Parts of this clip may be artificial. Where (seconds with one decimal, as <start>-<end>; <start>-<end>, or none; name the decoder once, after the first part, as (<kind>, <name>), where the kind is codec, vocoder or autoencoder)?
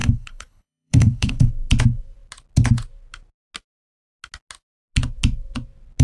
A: 0.0-1.5 (codec, HILCodec)